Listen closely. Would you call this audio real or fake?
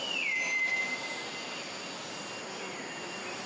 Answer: real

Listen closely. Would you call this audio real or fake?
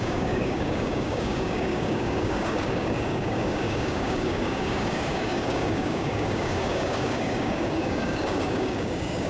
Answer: fake